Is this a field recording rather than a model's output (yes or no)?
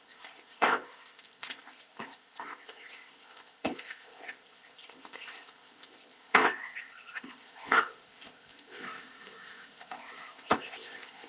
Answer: no